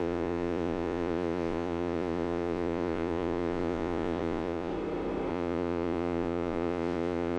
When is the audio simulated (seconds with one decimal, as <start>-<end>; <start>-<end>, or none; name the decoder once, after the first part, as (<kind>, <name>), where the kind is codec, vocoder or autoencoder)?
0.0-4.7 (vocoder, Vocos); 5.3-7.4